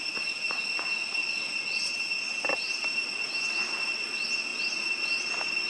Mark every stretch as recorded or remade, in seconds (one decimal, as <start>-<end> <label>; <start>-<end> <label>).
0.0-1.2 recorded; 1.2-1.9 remade; 1.9-5.7 recorded